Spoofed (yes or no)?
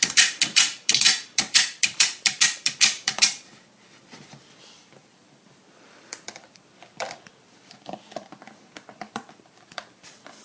yes